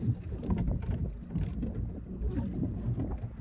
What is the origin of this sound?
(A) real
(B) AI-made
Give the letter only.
A